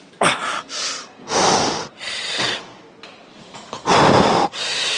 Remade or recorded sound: recorded